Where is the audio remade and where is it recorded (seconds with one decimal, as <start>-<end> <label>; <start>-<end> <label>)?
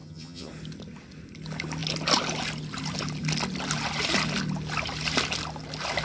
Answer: 0.0-0.5 remade; 0.5-6.0 recorded